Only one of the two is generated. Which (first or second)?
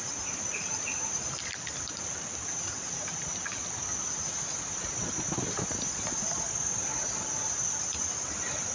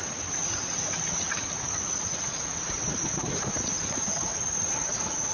second